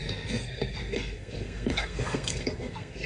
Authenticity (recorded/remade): remade